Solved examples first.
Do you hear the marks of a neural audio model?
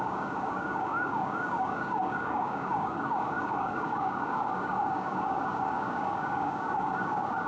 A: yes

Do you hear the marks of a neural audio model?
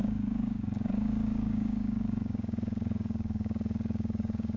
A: yes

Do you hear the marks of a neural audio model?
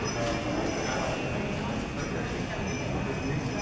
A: no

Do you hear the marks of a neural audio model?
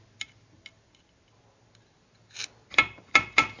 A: no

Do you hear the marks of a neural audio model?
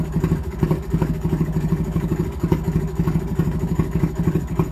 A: yes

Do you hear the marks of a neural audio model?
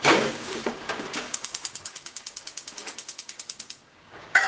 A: yes